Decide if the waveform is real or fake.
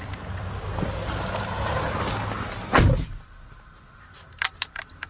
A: real